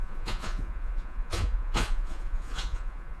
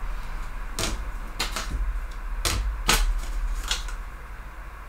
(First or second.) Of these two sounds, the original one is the second